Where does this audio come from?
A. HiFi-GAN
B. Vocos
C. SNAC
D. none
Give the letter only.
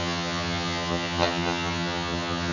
A